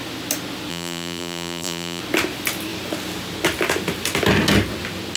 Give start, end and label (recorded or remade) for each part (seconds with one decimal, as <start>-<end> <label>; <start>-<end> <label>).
0.0-0.7 recorded; 0.7-2.0 remade; 2.0-5.2 recorded